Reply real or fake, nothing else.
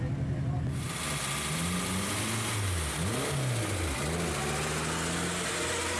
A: real